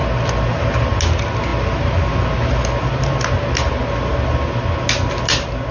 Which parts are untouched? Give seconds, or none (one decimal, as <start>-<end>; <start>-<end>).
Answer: 0.0-5.7